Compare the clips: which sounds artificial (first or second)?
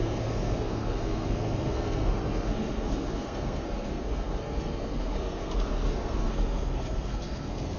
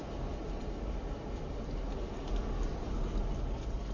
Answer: first